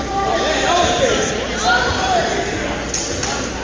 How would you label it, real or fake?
real